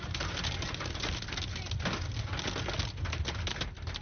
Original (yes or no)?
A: yes